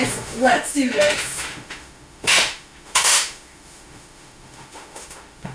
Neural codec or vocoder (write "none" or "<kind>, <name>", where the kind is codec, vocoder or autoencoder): autoencoder, DAC-VAE